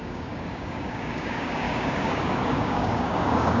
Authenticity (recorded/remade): remade